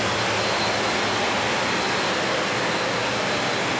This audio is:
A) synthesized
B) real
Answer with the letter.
B